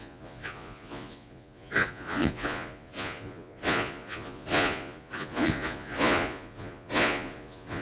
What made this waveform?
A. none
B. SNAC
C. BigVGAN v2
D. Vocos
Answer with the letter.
D